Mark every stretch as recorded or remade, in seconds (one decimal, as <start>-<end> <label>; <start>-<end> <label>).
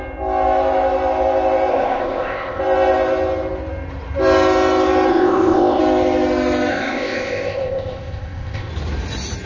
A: 0.0-1.7 recorded; 1.7-2.6 remade; 2.6-5.1 recorded; 5.1-5.8 remade; 5.8-6.7 recorded; 6.7-8.7 remade; 8.7-9.5 recorded